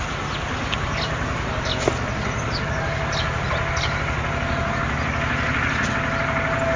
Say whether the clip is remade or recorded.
recorded